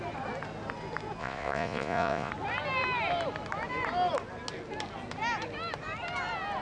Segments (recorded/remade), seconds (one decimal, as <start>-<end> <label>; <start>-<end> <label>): 0.0-1.2 recorded; 1.2-2.3 remade; 2.3-6.6 recorded